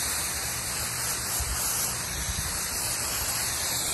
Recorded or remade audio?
remade